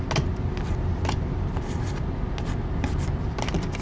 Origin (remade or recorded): recorded